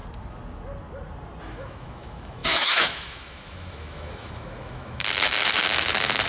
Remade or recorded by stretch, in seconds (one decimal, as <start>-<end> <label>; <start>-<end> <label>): 0.0-1.5 recorded; 1.5-6.3 remade